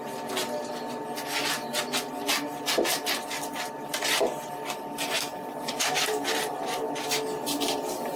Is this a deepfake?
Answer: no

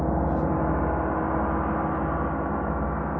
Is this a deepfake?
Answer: no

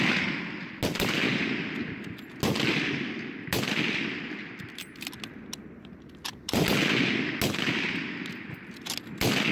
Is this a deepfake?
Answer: no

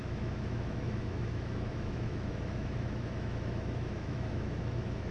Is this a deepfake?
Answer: yes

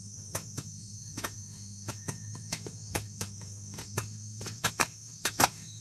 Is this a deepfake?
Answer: yes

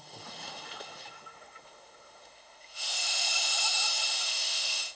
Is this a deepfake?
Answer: yes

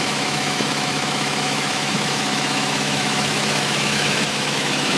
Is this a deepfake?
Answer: yes